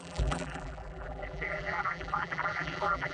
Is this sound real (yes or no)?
no